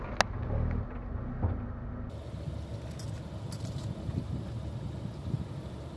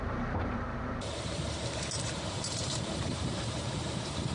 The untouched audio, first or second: first